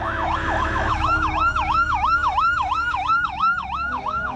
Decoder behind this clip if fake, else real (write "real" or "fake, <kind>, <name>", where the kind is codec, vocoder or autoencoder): fake, autoencoder, DAC-VAE